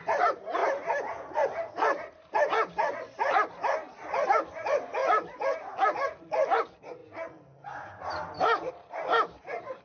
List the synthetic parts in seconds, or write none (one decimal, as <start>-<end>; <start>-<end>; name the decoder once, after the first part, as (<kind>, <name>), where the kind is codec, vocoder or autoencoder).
0.0-2.5 (vocoder, BigVGAN v2); 4.3-5.0; 6.2-7.0; 8.7-9.8